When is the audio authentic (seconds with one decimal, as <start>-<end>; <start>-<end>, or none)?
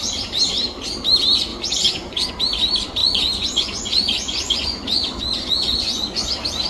0.0-1.5; 2.3-3.0; 6.3-6.7